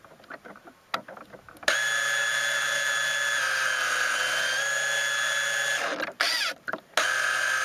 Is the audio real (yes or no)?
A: yes